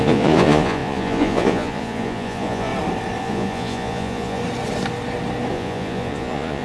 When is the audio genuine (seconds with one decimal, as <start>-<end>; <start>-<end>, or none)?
2.7-3.2; 4.4-5.5